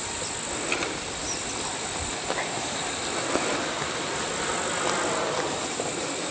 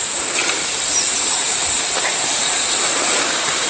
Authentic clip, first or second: first